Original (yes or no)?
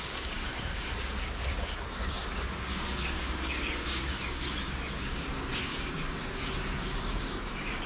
no